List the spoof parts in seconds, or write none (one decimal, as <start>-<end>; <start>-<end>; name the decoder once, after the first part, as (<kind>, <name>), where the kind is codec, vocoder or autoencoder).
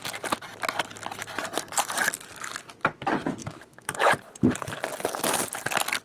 3.4-4.1 (autoencoder, DAC-VAE)